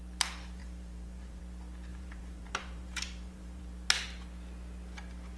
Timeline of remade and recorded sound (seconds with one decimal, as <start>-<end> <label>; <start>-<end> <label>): 0.0-0.6 recorded; 0.6-1.4 remade; 1.4-1.9 recorded; 1.9-3.6 remade; 3.6-5.4 recorded

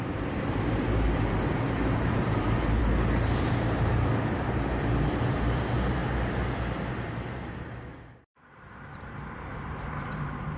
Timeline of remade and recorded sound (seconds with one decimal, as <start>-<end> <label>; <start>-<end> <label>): 0.0-2.8 remade; 2.8-3.5 recorded; 3.5-6.0 remade; 6.0-6.9 recorded; 6.9-10.6 remade

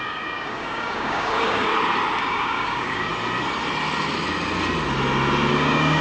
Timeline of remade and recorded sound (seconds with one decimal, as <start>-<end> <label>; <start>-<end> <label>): 0.0-1.7 remade; 1.7-2.2 recorded; 2.2-3.1 remade; 3.1-5.5 recorded; 5.5-6.0 remade